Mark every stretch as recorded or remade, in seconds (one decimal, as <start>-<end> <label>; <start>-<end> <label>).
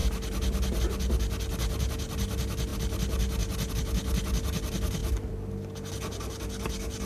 0.0-7.1 recorded